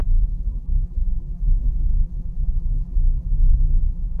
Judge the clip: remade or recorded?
remade